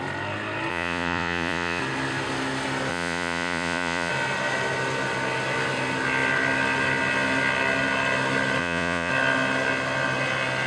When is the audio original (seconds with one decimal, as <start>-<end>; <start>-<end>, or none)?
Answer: 0.0-0.7; 1.8-2.9; 4.1-8.6; 9.1-10.7